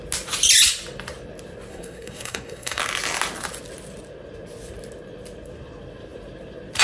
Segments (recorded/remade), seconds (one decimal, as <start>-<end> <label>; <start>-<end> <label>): 0.0-1.7 recorded; 1.7-2.8 remade; 2.8-6.8 recorded